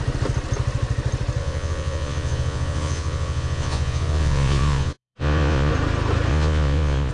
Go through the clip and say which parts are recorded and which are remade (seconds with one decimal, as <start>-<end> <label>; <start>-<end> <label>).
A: 0.0-1.4 recorded; 1.4-5.7 remade; 5.7-6.3 recorded; 6.3-7.1 remade